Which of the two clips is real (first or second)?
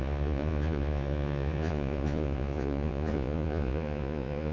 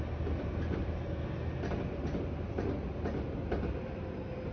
second